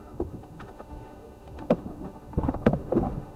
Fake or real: fake